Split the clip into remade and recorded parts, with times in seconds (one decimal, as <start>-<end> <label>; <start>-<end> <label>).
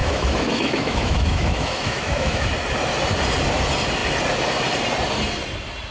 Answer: 0.0-2.5 remade; 2.5-5.9 recorded